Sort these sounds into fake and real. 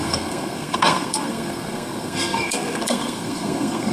fake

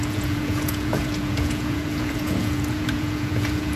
fake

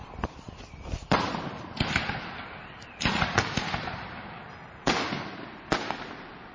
real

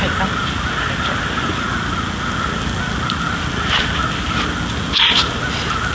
real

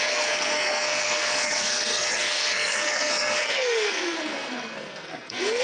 fake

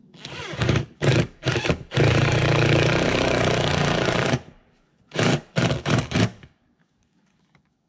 fake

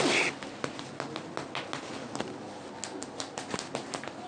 real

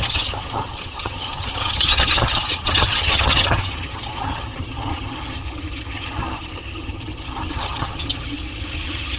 fake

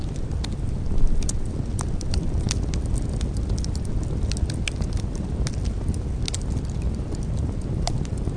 real